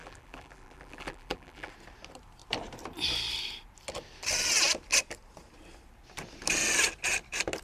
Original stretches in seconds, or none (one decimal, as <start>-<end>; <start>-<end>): 1.7-7.6